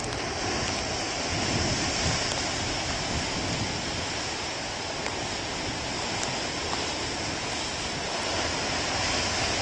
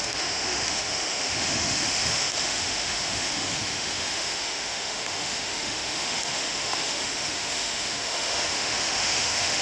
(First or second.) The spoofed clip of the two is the second